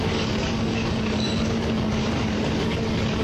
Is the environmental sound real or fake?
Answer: fake